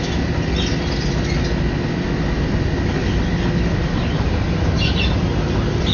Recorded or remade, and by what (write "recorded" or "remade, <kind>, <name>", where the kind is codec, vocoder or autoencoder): recorded